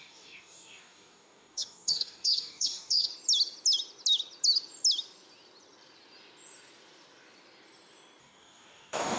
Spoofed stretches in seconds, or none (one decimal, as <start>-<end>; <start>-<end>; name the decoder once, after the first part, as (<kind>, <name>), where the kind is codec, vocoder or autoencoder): 0.0-3.1 (codec, DAC); 8.2-9.2